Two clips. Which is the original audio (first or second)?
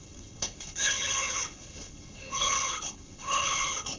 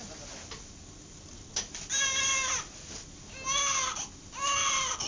second